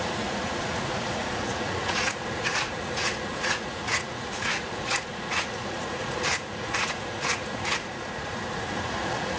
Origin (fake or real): fake